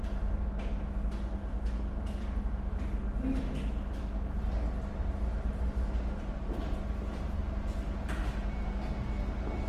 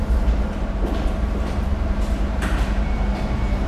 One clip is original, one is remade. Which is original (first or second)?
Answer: first